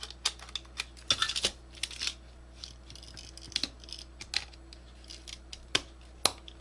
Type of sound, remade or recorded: recorded